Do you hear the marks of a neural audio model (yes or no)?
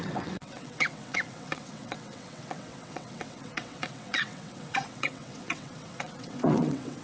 yes